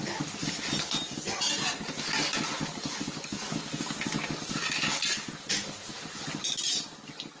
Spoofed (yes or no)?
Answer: no